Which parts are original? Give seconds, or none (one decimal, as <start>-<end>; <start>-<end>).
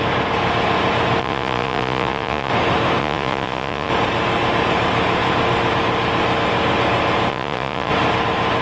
0.0-1.2; 2.5-3.0; 3.9-7.3; 7.9-8.6